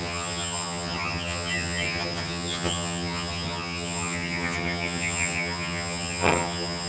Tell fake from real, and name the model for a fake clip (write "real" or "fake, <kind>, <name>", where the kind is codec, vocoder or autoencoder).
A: fake, vocoder, HiFi-GAN